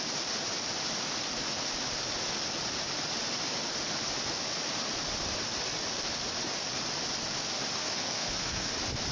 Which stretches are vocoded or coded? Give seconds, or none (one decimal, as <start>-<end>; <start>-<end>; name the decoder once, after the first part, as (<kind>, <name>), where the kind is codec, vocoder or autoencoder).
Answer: 7.8-8.7 (codec, SNAC)